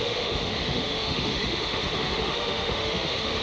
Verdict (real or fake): fake